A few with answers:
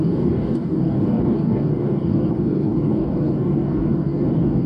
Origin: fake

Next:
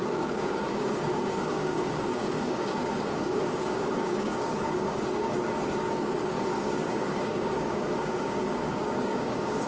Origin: fake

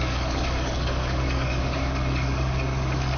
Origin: fake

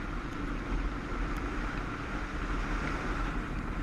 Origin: real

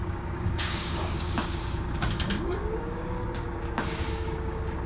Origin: fake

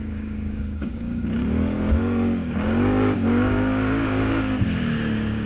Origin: fake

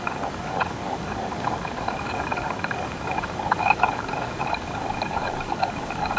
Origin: fake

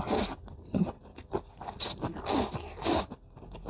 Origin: real